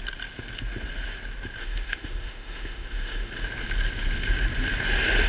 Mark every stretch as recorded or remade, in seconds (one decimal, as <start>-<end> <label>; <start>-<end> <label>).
0.0-1.6 recorded; 1.6-3.3 remade; 3.3-5.3 recorded